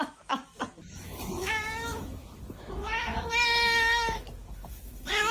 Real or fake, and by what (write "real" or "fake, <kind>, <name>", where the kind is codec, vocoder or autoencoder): fake, autoencoder, DAC-VAE